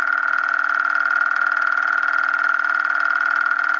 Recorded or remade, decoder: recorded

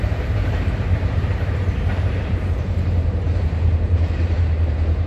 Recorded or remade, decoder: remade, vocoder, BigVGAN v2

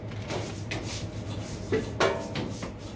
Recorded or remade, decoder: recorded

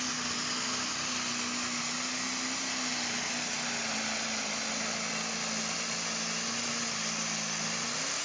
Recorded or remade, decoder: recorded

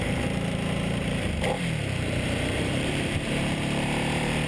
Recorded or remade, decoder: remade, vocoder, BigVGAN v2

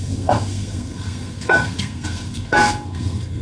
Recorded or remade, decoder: remade, codec, SNAC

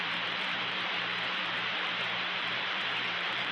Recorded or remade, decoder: remade, vocoder, BigVGAN v2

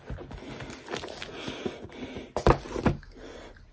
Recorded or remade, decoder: recorded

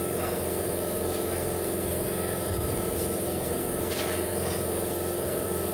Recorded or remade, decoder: remade, codec, SNAC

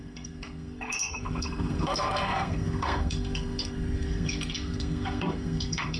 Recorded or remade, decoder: remade, codec, SNAC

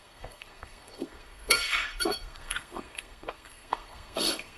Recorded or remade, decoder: remade, codec, SNAC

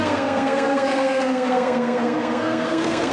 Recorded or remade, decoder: remade, codec, SNAC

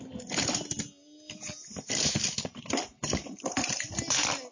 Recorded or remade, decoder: recorded